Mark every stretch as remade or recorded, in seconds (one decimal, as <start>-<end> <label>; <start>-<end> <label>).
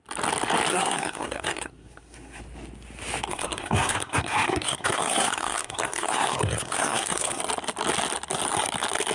0.0-0.7 recorded; 0.7-2.4 remade; 2.4-3.3 recorded; 3.3-7.4 remade; 7.4-9.1 recorded